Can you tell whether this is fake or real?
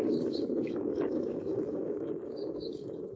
fake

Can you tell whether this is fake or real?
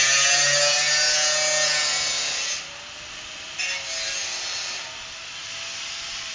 real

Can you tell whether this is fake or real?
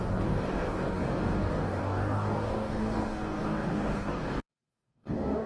fake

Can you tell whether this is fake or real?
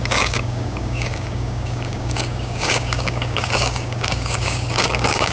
fake